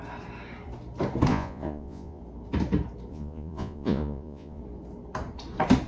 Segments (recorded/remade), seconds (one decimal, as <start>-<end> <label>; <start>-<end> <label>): 0.0-1.3 recorded; 1.3-2.2 remade; 2.2-3.1 recorded; 3.1-4.6 remade; 4.6-5.9 recorded